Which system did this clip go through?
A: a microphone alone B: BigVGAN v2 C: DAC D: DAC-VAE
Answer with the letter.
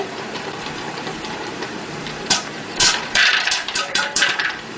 B